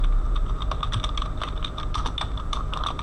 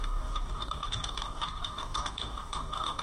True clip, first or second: first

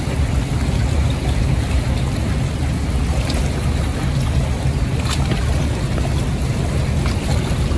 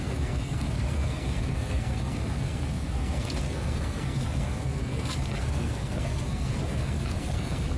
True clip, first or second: first